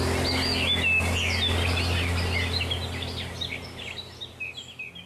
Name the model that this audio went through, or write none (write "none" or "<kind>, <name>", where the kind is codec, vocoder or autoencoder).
none